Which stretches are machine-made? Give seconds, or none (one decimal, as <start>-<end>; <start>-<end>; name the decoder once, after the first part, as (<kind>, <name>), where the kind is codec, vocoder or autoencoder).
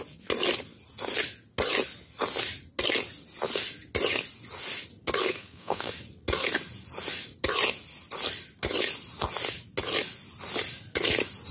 5.2-5.9 (codec, SNAC)